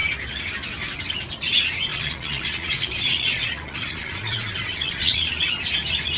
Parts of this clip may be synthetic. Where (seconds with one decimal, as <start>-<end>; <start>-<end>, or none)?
1.9-5.6